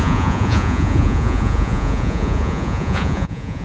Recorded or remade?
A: remade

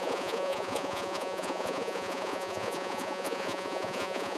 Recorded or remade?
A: remade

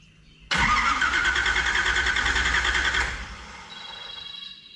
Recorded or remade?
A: recorded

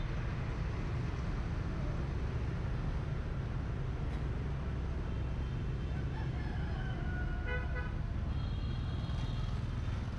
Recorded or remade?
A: recorded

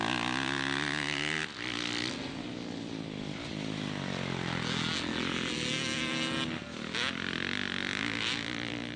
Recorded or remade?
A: recorded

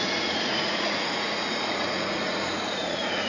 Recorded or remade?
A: remade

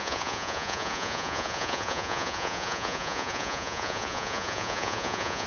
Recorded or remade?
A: remade